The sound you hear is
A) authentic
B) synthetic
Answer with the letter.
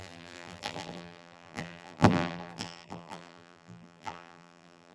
B